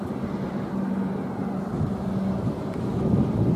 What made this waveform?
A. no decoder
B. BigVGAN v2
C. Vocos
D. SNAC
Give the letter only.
A